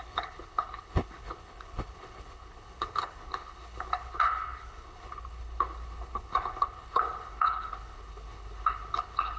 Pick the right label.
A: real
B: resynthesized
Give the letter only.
B